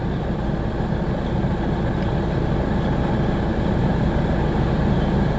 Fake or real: real